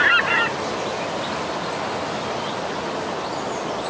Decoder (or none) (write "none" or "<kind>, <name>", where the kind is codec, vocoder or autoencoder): none